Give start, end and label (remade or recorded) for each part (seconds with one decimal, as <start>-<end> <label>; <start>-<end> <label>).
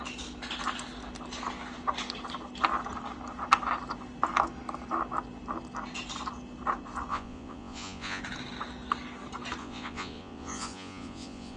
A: 0.0-7.1 recorded; 7.1-8.2 remade; 8.2-9.6 recorded; 9.6-11.6 remade